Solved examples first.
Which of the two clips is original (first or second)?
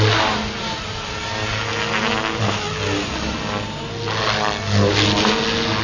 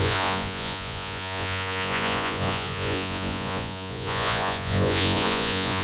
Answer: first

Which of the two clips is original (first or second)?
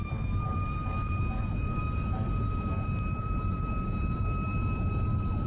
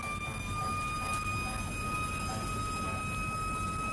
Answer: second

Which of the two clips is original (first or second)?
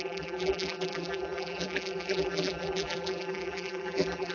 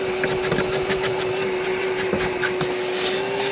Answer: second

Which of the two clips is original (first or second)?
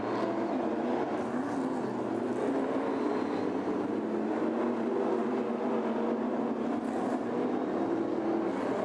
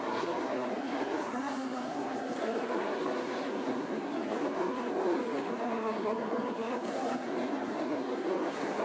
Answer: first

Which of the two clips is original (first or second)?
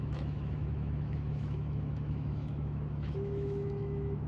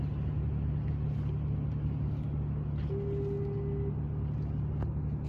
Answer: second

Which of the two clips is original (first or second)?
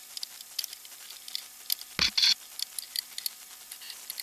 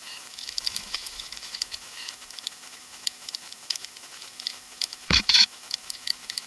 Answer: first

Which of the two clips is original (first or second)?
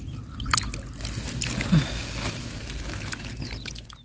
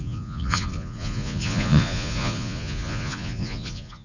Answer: first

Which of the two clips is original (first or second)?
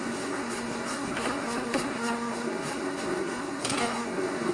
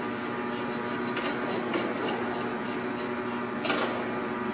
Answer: second